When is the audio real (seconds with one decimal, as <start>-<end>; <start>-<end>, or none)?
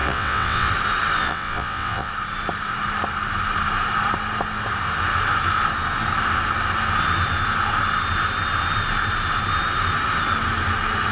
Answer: 0.7-1.2; 2.1-11.1